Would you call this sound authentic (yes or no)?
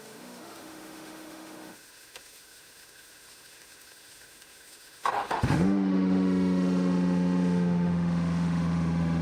no